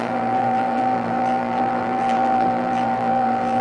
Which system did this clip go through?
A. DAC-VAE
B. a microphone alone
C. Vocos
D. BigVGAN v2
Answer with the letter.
D